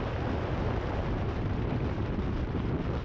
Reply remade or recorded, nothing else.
recorded